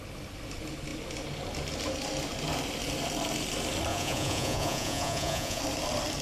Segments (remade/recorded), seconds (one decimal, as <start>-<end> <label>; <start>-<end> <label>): 0.0-3.9 recorded; 3.9-5.6 remade; 5.6-6.2 recorded